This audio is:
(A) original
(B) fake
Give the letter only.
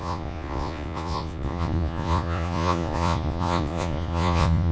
B